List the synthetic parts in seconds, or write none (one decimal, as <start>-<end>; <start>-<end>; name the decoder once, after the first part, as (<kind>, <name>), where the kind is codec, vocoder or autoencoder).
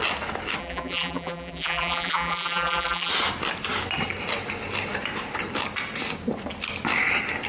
0.6-3.1 (vocoder, BigVGAN v2)